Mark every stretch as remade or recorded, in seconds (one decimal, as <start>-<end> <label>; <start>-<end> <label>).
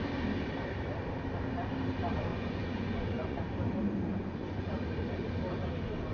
0.0-2.3 recorded; 2.3-3.4 remade; 3.4-4.1 recorded; 4.1-4.7 remade; 4.7-6.1 recorded